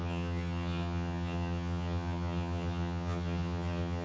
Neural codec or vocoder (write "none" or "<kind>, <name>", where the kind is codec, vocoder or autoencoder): vocoder, HiFi-GAN